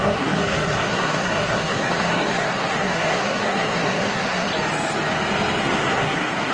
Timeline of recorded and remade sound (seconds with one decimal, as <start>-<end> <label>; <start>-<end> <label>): 0.0-4.5 remade; 4.5-5.6 recorded; 5.6-6.5 remade